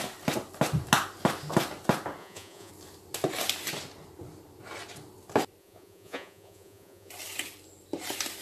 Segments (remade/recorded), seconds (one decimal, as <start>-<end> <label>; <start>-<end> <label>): 0.0-2.2 recorded; 2.2-2.7 remade; 2.7-5.6 recorded; 5.6-7.1 remade; 7.1-8.4 recorded